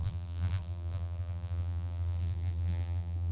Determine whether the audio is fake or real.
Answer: fake